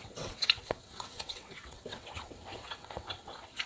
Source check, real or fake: fake